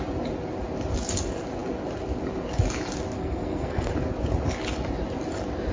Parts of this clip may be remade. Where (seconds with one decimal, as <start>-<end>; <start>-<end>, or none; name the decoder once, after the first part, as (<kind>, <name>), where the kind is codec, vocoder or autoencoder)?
3.2-3.9 (codec, SNAC)